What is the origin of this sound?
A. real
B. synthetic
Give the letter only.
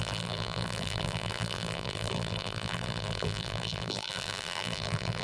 B